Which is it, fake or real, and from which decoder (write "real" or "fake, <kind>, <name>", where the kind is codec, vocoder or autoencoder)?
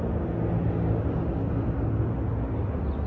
real